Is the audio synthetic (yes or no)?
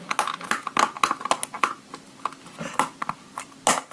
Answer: no